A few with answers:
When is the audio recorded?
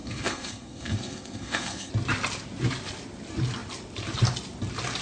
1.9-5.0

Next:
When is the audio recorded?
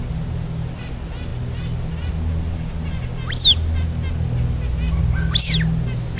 0.0-6.2